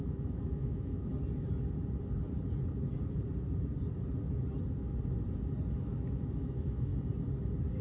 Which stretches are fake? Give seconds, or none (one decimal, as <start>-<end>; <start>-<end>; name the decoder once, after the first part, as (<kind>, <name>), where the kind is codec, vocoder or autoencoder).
0.0-1.1 (autoencoder, DAC-VAE); 5.8-6.9